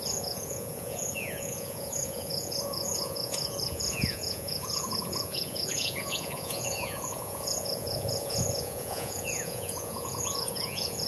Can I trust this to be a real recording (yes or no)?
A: no